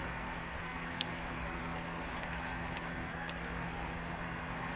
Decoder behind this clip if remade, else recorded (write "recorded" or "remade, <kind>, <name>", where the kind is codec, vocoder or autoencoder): remade, codec, SNAC